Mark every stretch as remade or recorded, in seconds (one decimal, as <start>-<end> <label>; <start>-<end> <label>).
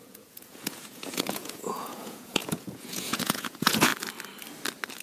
0.0-3.9 remade; 3.9-5.0 recorded